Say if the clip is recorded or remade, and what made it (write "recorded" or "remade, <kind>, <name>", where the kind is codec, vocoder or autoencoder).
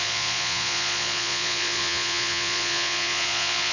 remade, vocoder, Vocos